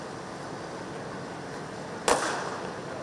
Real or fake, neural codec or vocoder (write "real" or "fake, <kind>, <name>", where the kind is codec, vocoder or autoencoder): real